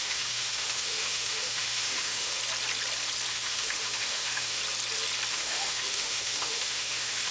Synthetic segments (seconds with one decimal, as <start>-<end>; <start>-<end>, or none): 0.0-2.4; 3.3-4.6; 5.3-7.3